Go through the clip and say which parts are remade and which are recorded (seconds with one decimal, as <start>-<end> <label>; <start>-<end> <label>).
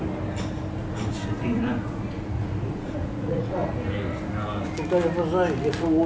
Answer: 0.0-0.8 recorded; 0.8-3.7 remade; 3.7-6.1 recorded